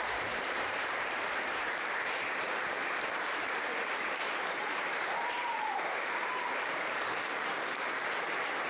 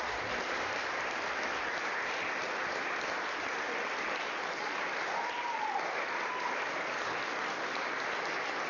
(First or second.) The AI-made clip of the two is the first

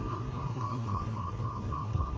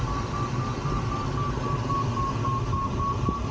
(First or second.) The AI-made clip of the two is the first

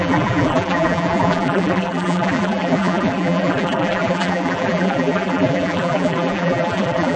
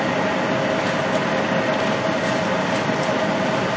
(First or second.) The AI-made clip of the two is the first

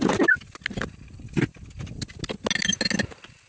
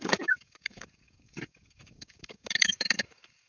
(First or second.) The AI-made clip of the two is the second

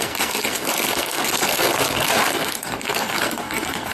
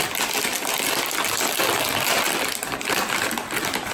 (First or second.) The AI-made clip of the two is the first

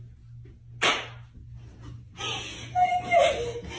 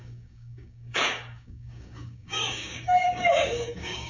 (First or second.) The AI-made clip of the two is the second